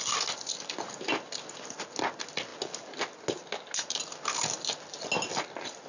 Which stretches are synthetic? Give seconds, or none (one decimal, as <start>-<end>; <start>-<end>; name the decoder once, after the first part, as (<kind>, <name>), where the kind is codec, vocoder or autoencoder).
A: none